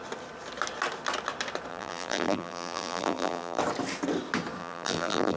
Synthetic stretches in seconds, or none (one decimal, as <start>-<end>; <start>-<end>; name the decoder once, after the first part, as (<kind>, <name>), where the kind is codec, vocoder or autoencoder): 1.7-3.6 (vocoder, BigVGAN v2); 4.6-5.4